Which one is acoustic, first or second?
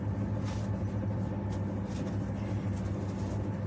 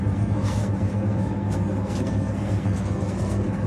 first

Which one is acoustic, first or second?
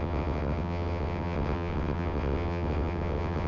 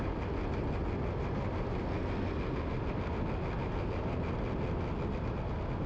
second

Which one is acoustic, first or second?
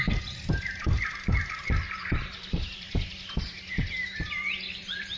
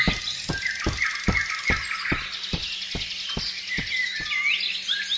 second